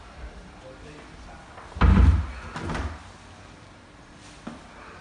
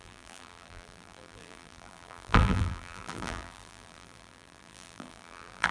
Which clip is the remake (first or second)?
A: second